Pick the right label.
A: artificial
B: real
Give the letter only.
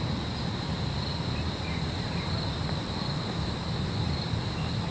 B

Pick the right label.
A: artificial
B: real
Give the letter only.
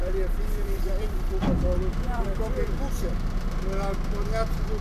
A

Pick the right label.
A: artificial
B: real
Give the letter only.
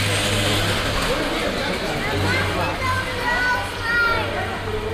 B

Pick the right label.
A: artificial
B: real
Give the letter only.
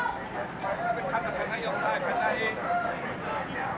B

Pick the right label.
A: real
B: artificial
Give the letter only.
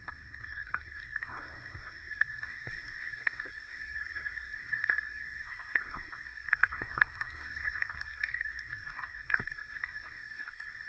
B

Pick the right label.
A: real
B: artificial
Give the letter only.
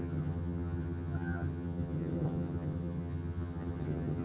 B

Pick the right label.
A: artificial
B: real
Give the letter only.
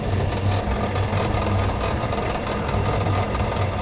B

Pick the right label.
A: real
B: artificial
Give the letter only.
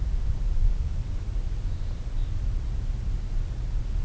A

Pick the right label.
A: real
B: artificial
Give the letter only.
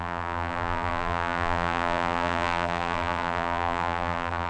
B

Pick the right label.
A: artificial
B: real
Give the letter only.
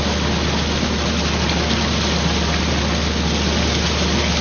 B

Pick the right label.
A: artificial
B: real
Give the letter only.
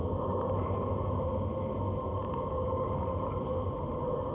B